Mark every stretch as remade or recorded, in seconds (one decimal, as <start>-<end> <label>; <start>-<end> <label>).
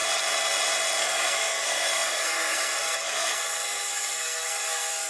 0.0-1.0 recorded; 1.0-5.1 remade